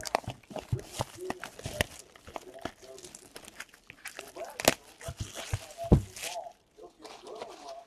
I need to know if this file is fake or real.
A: real